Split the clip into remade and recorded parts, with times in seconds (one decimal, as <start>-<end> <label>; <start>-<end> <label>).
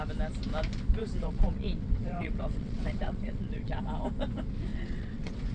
0.0-1.0 recorded; 1.0-3.8 remade; 3.8-4.7 recorded; 4.7-5.5 remade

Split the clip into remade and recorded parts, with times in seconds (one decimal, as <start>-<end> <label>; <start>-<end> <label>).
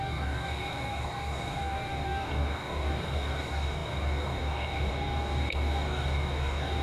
0.0-6.8 remade